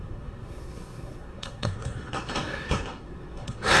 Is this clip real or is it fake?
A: fake